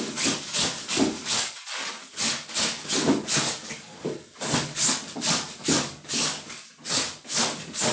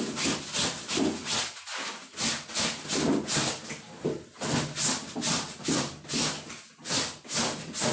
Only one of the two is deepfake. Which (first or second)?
first